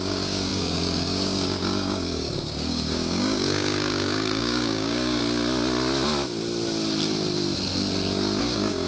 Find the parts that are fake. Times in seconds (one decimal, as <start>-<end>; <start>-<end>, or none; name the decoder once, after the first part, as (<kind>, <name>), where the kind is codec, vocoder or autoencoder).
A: 0.0-5.2 (codec, DAC); 8.4-8.9